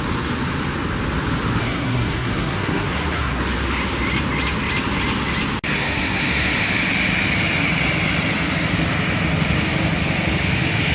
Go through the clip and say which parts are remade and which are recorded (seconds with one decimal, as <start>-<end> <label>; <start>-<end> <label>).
0.0-1.6 recorded; 1.6-3.4 remade; 3.4-5.7 recorded; 5.7-6.6 remade; 6.6-10.9 recorded